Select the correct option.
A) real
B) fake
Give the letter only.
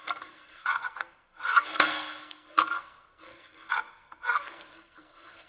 B